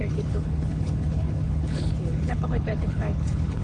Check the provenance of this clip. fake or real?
fake